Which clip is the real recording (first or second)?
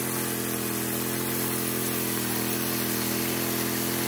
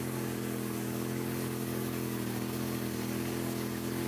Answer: first